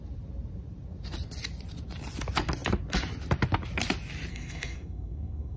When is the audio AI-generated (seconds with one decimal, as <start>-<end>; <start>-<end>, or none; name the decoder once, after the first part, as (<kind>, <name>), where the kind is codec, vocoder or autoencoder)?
4.3-5.6 (codec, SNAC)